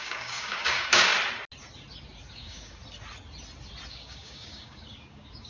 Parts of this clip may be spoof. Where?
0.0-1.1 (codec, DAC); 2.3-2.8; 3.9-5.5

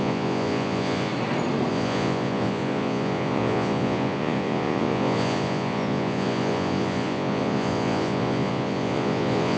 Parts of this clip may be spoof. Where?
0.0-1.1 (vocoder, Vocos); 1.7-9.6

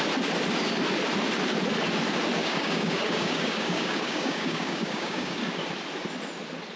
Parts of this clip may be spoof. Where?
2.4-5.4 (codec, DAC)

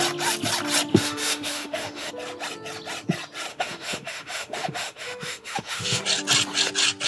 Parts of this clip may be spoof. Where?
0.9-2.1 (autoencoder, DAC-VAE); 3.5-6.0

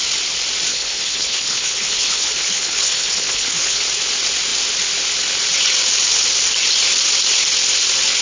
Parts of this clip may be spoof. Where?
0.7-3.8 (codec, HILCodec)

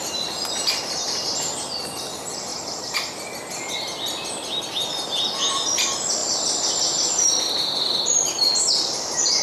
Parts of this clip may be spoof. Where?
2.5-3.3 (vocoder, BigVGAN v2); 6.2-8.6

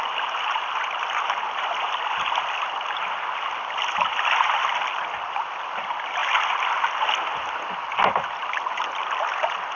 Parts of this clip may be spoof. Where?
none

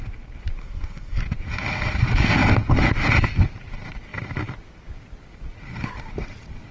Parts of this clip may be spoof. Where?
0.6-1.2 (codec, SNAC)